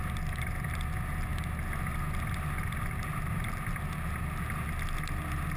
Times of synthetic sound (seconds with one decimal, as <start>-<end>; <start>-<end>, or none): none